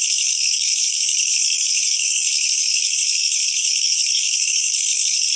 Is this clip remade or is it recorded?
remade